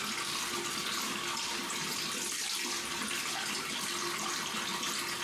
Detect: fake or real real